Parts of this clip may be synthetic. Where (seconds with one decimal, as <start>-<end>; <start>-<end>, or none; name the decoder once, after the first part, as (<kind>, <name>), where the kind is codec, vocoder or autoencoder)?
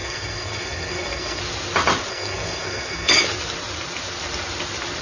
0.0-1.4 (codec, SNAC); 2.1-3.2